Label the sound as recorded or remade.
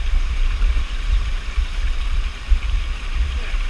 remade